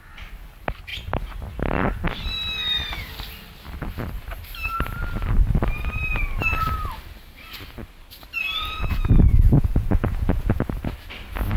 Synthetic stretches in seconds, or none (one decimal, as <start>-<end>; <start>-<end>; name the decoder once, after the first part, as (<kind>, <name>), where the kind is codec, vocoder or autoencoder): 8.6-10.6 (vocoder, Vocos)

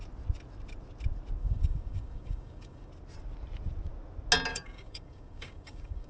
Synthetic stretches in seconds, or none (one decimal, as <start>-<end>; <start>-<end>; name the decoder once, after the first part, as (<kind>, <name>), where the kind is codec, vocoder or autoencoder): 1.4-2.9 (codec, DAC); 4.5-6.1

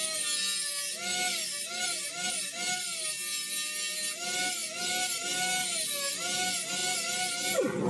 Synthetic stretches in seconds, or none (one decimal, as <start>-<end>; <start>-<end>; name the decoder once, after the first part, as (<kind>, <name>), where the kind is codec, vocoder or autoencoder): none

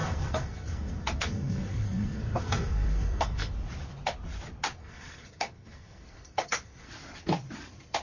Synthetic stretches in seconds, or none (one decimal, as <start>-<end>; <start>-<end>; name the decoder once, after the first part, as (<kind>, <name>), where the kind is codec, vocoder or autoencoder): 0.0-3.5 (codec, SNAC); 4.8-6.9

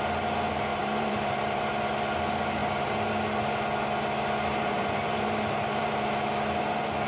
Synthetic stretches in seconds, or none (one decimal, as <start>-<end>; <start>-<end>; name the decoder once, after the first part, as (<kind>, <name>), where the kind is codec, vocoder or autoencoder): 0.7-1.6 (vocoder, BigVGAN v2); 2.6-3.2; 4.5-5.9

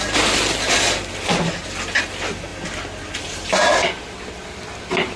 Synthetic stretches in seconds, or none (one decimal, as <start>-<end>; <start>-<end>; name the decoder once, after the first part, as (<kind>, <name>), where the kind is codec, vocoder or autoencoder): none

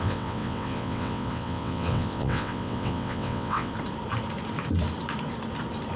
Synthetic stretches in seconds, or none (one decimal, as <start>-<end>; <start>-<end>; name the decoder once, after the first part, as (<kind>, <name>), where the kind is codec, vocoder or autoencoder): 0.0-3.7 (vocoder, WaveNeXt)